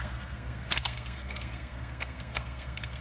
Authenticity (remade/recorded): remade